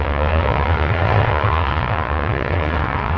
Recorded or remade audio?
remade